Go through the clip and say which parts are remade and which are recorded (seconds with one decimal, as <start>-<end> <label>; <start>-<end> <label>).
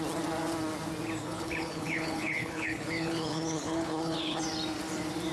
0.0-1.2 recorded; 1.2-4.4 remade; 4.4-5.3 recorded